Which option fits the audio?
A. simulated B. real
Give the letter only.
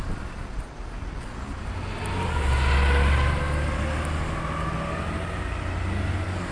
B